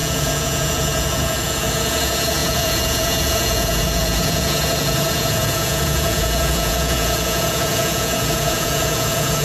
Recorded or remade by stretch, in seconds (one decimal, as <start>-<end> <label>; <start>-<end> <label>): 0.0-9.4 remade